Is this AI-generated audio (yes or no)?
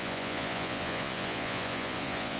yes